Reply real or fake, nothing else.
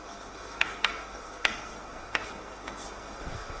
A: fake